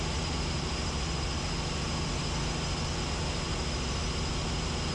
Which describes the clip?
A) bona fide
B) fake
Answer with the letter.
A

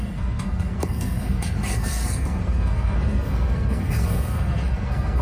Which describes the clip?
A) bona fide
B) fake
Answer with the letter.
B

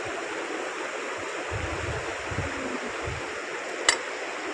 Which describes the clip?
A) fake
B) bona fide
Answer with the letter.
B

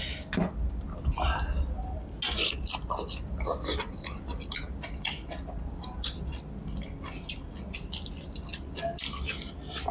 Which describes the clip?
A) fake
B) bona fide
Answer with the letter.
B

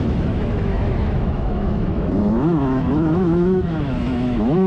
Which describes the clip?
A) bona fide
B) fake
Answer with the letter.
B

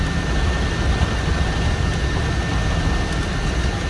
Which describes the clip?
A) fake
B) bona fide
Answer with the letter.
B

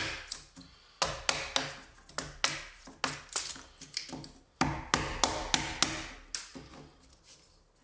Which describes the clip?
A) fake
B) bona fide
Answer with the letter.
B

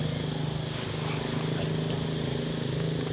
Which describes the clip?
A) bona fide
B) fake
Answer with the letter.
A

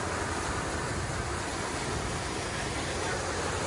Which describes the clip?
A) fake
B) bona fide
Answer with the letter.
B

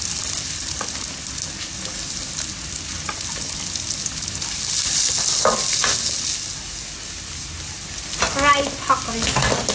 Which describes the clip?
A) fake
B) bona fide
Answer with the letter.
B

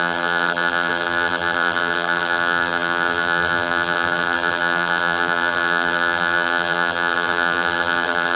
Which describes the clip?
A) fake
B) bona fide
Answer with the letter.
A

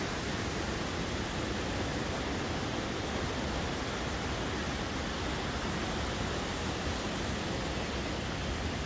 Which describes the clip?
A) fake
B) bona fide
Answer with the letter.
B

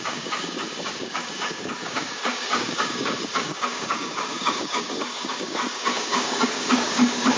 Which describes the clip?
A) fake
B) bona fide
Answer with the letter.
A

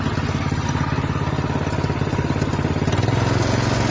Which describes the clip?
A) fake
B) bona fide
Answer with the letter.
B